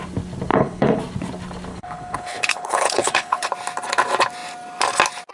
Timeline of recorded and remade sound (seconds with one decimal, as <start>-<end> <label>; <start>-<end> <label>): 0.0-0.5 recorded; 0.5-1.0 remade; 1.0-1.7 recorded; 1.7-3.5 remade; 3.5-5.3 recorded